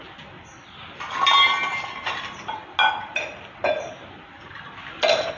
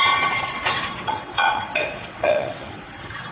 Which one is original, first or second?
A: first